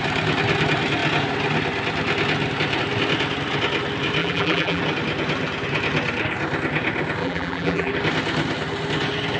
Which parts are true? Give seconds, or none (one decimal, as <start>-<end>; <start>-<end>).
0.0-4.2; 4.8-7.2; 7.9-9.4